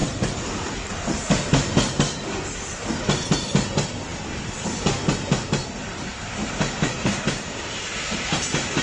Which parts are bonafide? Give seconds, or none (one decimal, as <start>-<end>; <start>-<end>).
0.5-6.4